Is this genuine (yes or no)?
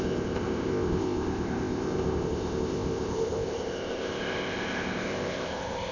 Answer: no